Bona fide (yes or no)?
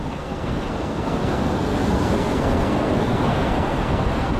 no